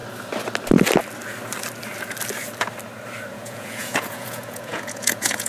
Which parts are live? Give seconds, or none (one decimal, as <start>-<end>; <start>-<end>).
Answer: 0.0-3.3